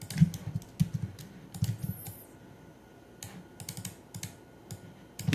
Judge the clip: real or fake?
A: real